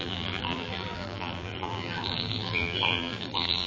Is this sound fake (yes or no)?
yes